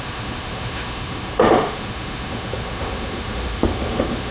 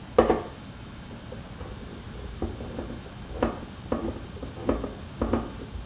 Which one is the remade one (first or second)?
first